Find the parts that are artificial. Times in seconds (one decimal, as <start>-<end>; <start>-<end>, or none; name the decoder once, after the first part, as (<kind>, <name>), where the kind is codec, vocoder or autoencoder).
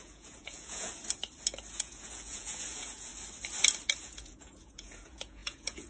0.0-0.9 (vocoder, Vocos); 1.7-3.1; 4.0-5.9